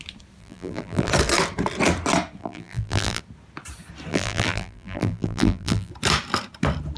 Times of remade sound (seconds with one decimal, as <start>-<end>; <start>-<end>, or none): 0.4-1.1; 2.4-3.2; 4.1-5.9

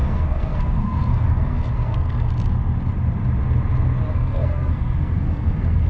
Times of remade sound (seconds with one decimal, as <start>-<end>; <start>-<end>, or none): 0.0-2.3; 4.1-5.9

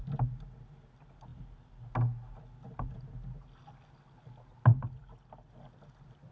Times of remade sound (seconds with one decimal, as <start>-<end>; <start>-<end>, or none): none

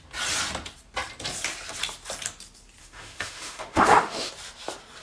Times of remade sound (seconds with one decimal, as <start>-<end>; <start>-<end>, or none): 2.8-4.3

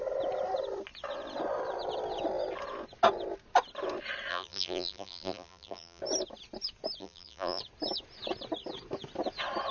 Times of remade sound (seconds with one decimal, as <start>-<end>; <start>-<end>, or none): 4.3-6.0; 7.0-7.6

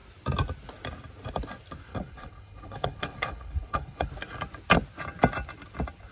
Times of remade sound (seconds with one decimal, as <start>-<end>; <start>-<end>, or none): 1.9-4.1